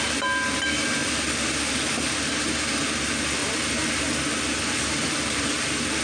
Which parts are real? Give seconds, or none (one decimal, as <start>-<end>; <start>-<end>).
0.0-6.0